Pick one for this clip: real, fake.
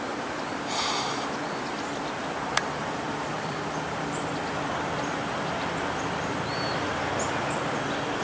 fake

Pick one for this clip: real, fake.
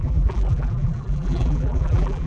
fake